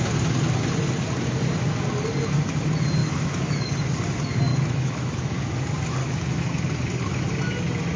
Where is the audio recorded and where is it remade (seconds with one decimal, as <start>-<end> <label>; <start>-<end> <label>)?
0.0-3.0 recorded; 3.0-3.7 remade; 3.7-4.5 recorded; 4.5-5.3 remade; 5.3-6.0 recorded; 6.0-6.5 remade; 6.5-8.0 recorded